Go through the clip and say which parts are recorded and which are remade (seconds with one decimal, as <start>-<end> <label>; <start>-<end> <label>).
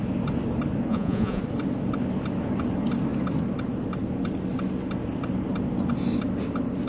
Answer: 0.0-0.9 recorded; 0.9-1.4 remade; 1.4-6.9 recorded